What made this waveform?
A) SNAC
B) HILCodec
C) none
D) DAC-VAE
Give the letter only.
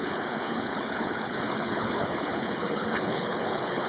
B